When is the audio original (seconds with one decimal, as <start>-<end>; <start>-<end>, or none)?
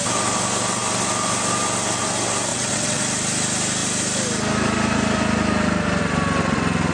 0.0-2.5; 3.0-6.9